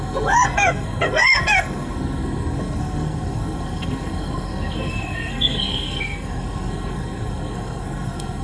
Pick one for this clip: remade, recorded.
remade